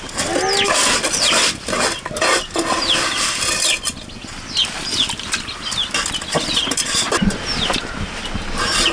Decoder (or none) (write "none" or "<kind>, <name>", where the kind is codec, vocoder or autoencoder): none